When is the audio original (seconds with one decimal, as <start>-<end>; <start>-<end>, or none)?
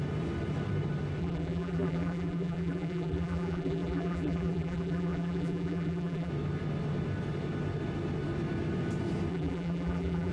0.0-1.2; 6.3-9.3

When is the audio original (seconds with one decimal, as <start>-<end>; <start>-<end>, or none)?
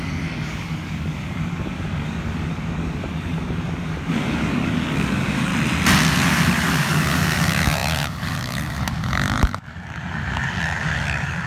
5.5-6.1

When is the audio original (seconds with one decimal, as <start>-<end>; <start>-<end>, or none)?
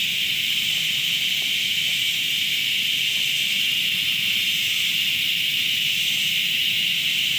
2.3-3.6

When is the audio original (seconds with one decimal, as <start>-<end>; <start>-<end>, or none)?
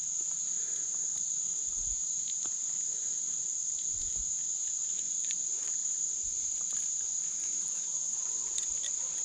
0.0-4.9; 5.8-7.7; 8.4-9.2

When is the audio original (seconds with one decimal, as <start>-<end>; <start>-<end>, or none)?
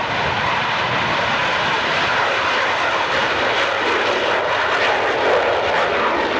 none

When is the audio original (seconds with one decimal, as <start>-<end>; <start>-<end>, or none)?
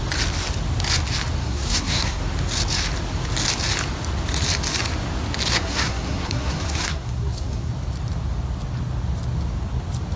0.0-1.4; 2.2-5.5; 7.7-10.2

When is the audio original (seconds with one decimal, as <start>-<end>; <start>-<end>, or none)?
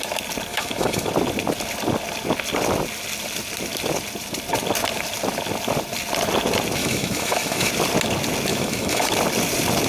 0.0-0.5; 1.1-6.8; 7.7-8.5; 9.1-9.9